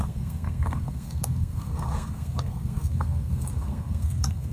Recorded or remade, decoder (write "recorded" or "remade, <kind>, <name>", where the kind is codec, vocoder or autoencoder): remade, codec, SNAC